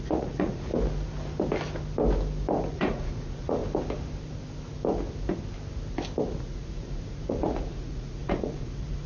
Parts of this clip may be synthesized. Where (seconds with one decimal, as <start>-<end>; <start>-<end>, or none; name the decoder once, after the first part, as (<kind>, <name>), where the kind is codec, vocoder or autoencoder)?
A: 0.0-0.7 (vocoder, Vocos); 2.7-3.6; 6.4-9.1